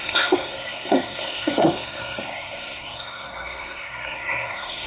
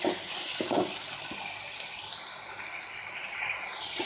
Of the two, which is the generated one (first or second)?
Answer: first